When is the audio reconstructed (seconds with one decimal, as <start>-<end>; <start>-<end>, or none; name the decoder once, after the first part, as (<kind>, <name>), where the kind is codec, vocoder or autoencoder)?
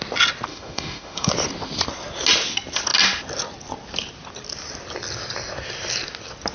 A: 0.5-1.3 (autoencoder, DAC-VAE)